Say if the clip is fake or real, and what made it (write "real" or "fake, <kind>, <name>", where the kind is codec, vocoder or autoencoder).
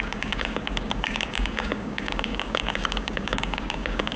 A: fake, codec, DAC